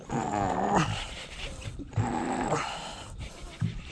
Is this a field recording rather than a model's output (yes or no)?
yes